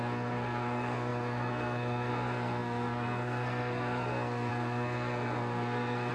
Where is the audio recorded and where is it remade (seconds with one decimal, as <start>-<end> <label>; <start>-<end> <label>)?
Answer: 0.0-6.1 remade